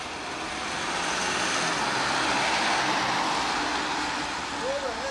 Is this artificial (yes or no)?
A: no